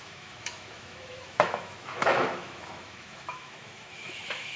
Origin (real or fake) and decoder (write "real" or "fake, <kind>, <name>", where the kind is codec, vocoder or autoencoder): fake, autoencoder, DAC-VAE